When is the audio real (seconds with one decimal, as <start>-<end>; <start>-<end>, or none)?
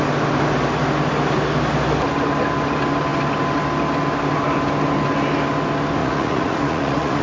0.0-6.0